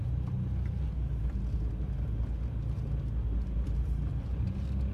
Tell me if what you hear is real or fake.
real